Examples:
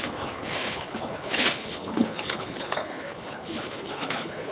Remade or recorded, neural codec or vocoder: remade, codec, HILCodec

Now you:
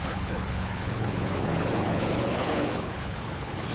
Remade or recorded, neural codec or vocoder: remade, codec, HILCodec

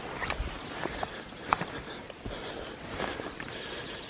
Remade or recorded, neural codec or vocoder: recorded